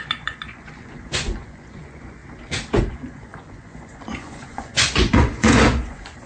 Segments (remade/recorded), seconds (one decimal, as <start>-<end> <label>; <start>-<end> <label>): 0.0-2.2 remade; 2.2-2.8 recorded; 2.8-6.3 remade